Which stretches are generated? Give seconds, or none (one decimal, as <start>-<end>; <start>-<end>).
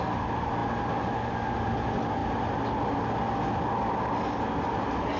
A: none